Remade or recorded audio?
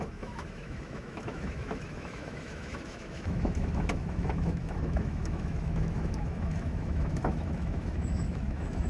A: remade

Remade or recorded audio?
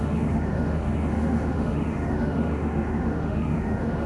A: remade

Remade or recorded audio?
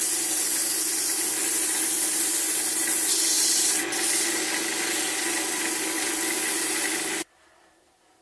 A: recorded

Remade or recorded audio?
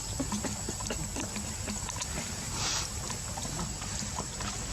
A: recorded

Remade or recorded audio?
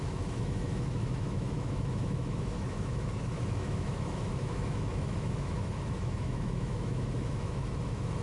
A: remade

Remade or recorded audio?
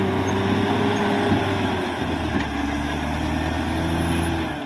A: recorded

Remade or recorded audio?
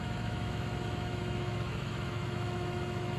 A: remade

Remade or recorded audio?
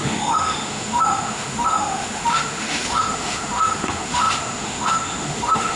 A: remade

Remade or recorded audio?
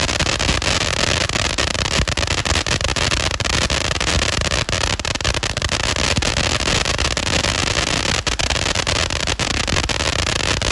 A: recorded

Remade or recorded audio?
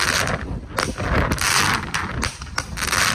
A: recorded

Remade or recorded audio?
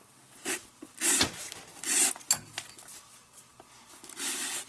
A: recorded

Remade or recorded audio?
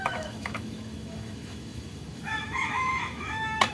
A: remade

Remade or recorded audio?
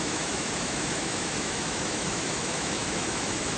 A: remade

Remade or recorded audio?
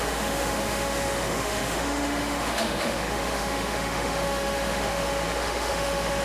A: remade